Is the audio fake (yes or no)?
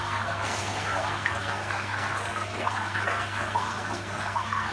yes